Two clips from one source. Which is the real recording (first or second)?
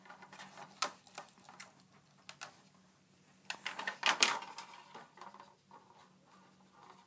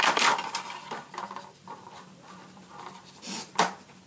first